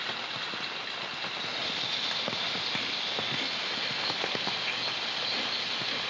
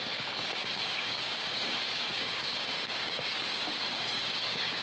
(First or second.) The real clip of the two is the first